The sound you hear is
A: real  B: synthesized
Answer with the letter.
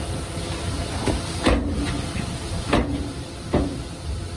A